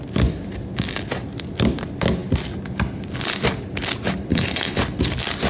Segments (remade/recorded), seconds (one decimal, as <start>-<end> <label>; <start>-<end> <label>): 0.0-4.3 recorded; 4.3-4.8 remade; 4.8-5.5 recorded